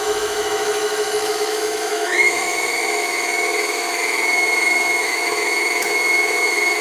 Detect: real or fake fake